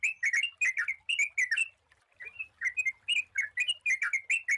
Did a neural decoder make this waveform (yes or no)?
no